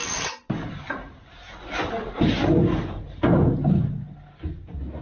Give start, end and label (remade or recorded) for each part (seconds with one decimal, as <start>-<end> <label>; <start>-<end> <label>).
0.0-5.0 recorded